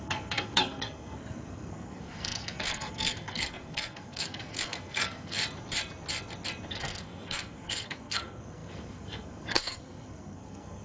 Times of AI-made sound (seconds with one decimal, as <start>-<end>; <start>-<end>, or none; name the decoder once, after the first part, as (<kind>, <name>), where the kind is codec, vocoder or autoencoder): 0.0-5.4 (codec, SNAC); 6.7-10.8